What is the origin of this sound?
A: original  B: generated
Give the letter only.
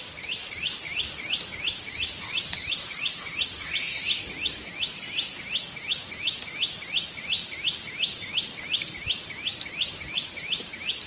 A